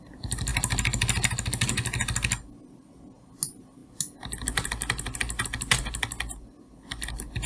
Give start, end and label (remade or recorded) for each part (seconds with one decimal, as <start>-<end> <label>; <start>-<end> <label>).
0.0-7.5 recorded